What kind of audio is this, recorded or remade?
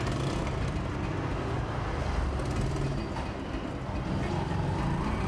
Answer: recorded